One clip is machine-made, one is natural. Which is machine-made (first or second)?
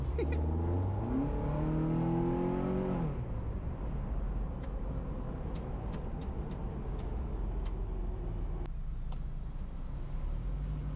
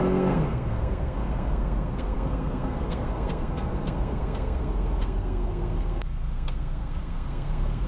second